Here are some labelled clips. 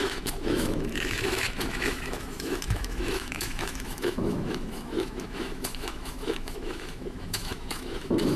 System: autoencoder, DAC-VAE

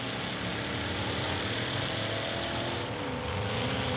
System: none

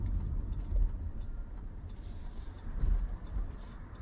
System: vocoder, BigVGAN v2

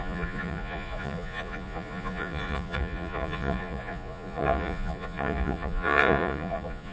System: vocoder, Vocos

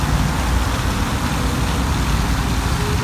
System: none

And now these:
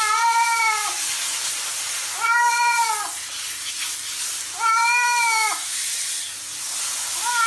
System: none